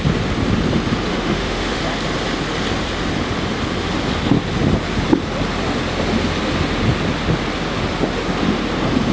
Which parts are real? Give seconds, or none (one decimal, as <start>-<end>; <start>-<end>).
0.0-1.1; 1.8-9.1